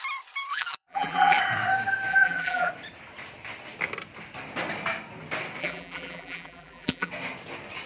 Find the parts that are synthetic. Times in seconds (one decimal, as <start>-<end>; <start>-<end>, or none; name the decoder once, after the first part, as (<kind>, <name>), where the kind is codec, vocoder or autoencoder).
0.5-1.4 (vocoder, BigVGAN v2); 2.1-2.7; 5.6-7.1